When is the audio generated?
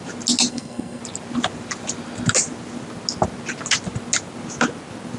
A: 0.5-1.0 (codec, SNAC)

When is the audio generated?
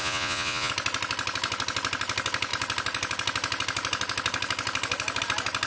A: 0.0-0.7 (vocoder, Vocos)